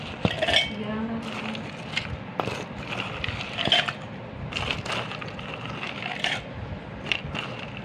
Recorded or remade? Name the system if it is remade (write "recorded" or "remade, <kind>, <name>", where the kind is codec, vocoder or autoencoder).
recorded